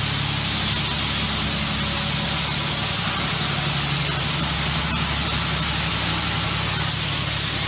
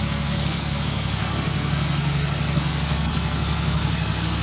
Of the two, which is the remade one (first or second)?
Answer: second